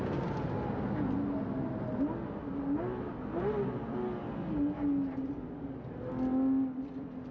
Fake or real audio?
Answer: real